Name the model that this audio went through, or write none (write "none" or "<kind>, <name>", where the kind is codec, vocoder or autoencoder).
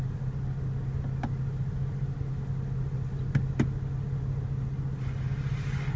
none